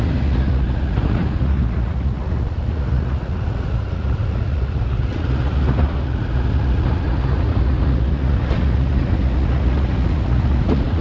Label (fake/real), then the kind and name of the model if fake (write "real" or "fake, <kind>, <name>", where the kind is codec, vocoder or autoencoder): fake, vocoder, Vocos